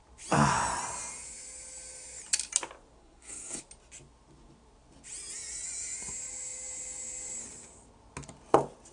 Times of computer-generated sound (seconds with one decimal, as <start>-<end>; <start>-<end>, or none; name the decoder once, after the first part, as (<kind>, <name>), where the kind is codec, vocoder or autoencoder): 3.0-3.6 (codec, SNAC)